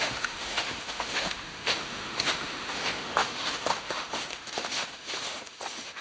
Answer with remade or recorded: remade